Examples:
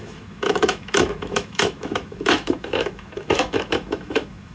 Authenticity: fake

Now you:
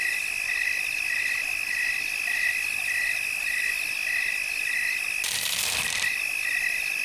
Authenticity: fake